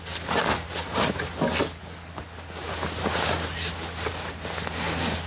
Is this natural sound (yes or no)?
yes